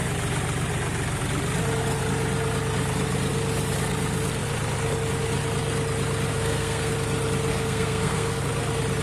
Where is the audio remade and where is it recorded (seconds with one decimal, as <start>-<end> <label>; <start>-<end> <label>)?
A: 0.0-6.3 recorded; 6.3-6.9 remade; 6.9-7.5 recorded; 7.5-8.4 remade; 8.4-9.0 recorded